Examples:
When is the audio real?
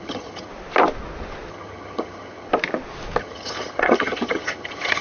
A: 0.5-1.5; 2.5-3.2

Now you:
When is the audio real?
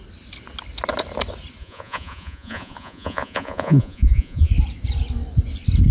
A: 0.0-1.6; 4.5-5.9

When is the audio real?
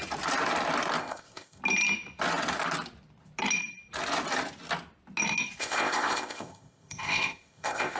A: 0.0-1.0; 1.6-5.6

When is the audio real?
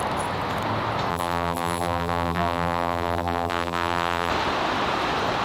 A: 0.0-1.1; 4.3-5.4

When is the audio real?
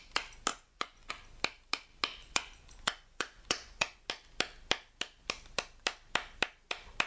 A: 0.0-0.5; 1.1-2.2; 4.1-7.1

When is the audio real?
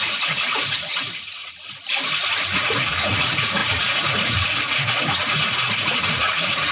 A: 1.4-2.4